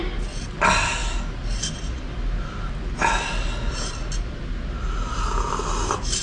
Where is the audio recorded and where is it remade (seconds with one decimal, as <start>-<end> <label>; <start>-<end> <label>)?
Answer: 0.0-6.2 recorded